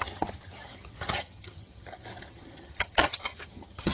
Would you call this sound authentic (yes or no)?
no